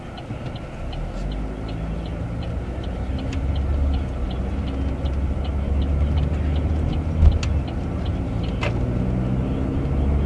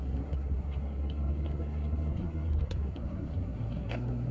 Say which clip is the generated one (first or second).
second